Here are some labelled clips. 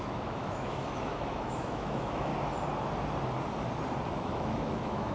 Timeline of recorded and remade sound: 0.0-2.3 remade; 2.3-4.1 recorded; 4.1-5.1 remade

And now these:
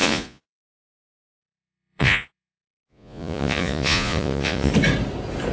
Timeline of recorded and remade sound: 0.0-0.9 remade; 0.9-1.4 recorded; 1.4-4.7 remade; 4.7-5.5 recorded

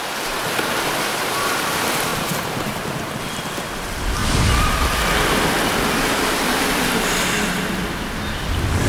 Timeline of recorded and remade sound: 0.0-2.1 recorded; 2.1-3.2 remade; 3.2-8.9 recorded

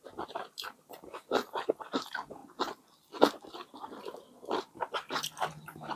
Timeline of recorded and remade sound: 0.0-2.4 remade; 2.4-3.5 recorded; 3.5-6.0 remade

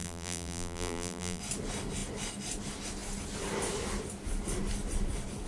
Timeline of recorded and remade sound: 0.0-1.4 remade; 1.4-5.5 recorded